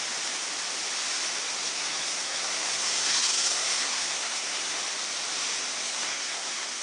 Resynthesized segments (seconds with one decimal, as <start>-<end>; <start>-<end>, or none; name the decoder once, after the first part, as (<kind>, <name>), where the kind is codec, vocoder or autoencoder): 1.6-4.8 (codec, SNAC); 5.8-6.8